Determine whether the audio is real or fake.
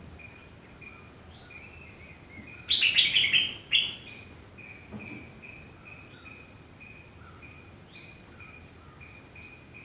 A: real